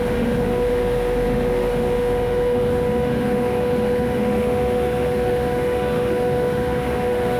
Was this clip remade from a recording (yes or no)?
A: yes